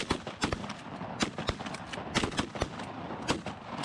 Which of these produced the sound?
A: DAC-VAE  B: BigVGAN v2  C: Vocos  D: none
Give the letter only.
D